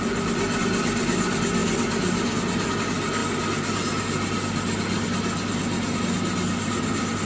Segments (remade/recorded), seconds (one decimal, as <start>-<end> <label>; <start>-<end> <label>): 0.0-7.3 recorded